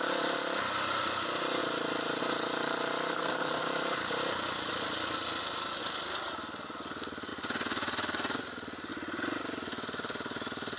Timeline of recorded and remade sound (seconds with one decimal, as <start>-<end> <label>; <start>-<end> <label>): 0.0-3.1 recorded; 3.1-3.6 remade; 3.6-10.8 recorded